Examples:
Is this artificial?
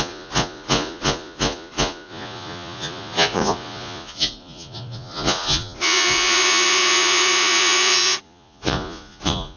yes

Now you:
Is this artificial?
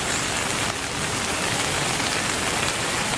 no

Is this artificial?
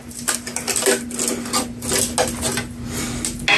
no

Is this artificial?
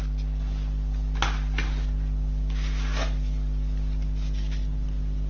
no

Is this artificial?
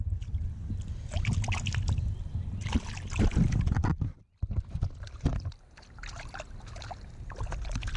no